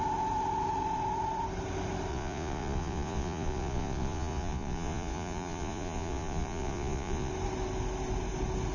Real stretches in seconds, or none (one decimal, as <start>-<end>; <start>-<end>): 0.0-2.1; 7.3-8.7